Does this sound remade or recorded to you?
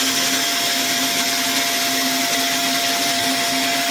recorded